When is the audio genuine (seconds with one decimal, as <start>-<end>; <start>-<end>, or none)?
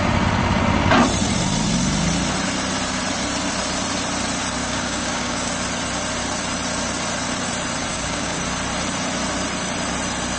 0.0-4.6; 5.5-7.9; 8.4-10.4